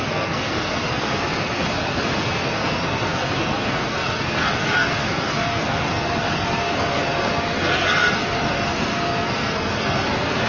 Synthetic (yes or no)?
yes